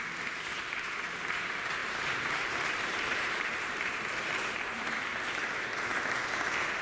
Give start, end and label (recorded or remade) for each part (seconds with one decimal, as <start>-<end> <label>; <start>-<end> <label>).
0.0-1.8 recorded; 1.8-3.9 remade; 3.9-6.8 recorded